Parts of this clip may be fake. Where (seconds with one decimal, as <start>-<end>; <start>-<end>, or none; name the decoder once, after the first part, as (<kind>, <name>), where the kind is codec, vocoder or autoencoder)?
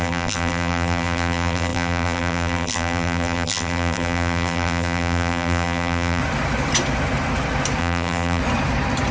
0.0-6.2 (vocoder, BigVGAN v2); 7.8-8.4